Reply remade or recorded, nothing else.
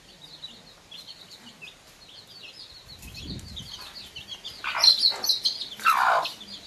recorded